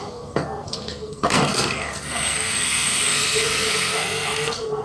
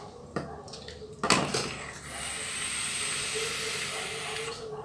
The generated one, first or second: first